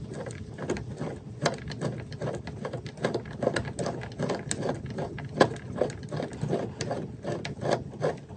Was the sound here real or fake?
real